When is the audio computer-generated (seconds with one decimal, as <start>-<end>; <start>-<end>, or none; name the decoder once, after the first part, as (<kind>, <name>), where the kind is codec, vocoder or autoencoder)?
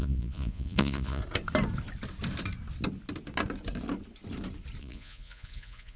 0.0-1.2 (vocoder, Vocos); 4.8-6.0